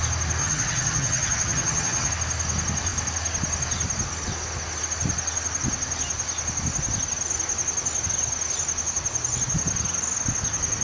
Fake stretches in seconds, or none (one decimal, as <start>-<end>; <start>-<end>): 0.4-2.1